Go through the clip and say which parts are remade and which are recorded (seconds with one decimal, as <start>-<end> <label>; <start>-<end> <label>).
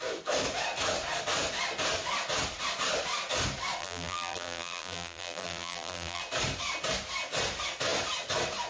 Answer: 0.0-3.8 recorded; 3.8-6.2 remade; 6.2-8.7 recorded